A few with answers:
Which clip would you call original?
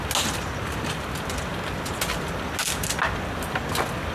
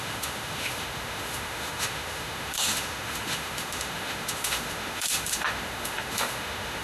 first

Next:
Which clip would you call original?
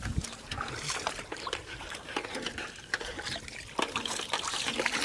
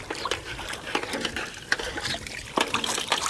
second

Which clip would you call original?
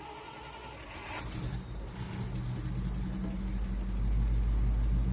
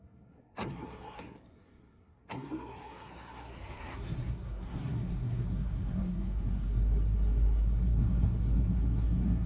first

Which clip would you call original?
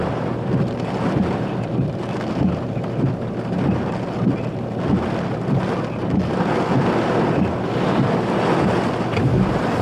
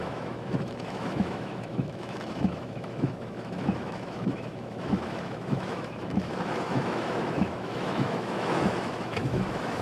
first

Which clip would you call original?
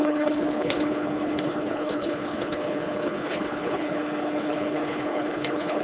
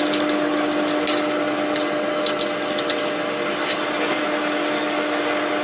second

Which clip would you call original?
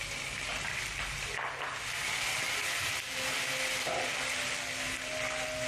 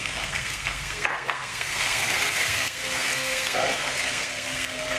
first